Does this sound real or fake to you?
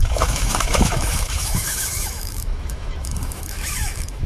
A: fake